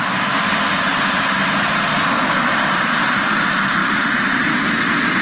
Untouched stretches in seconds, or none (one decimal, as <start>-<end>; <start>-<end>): 0.9-2.5